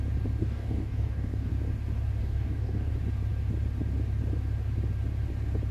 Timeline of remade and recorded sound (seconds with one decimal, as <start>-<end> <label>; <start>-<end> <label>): 0.0-0.4 recorded; 0.4-1.5 remade; 1.5-2.2 recorded; 2.2-2.9 remade; 2.9-5.7 recorded